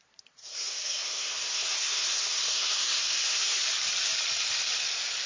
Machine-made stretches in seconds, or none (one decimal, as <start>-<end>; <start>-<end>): 0.4-3.6